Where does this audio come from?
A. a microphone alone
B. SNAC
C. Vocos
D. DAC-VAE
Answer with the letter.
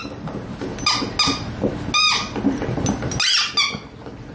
A